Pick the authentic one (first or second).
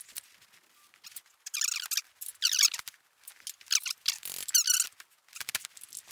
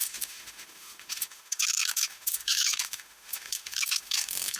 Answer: first